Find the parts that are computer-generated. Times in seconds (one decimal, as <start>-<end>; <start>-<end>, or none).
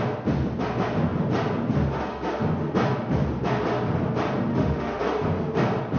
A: 4.5-5.0